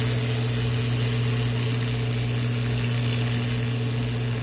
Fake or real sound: real